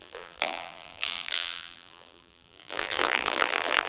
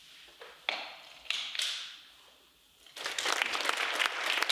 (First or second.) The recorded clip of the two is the second